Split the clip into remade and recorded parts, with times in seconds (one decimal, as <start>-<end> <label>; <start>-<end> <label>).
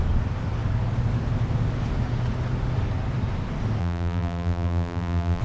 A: 0.0-3.8 recorded; 3.8-5.4 remade